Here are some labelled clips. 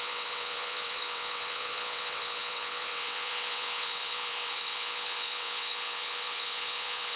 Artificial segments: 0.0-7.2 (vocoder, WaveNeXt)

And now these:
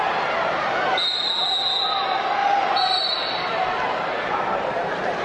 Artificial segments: 2.4-3.0 (vocoder, BigVGAN v2)

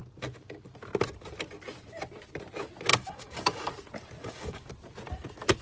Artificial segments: 2.9-3.7 (codec, DAC); 4.2-4.7

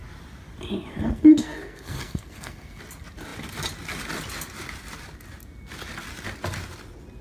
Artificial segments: 0.9-2.8 (codec, SNAC)

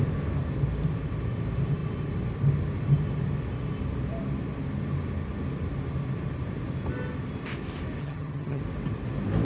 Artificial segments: 8.0-8.6 (vocoder, HiFi-GAN)

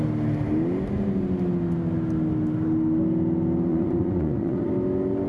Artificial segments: 3.7-4.7 (vocoder, Vocos)

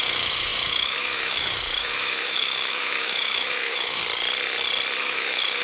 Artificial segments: 0.0-4.0 (autoencoder, DAC-VAE); 5.0-5.6

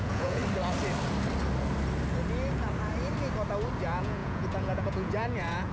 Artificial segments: 0.0-0.4 (vocoder, Vocos); 3.8-5.7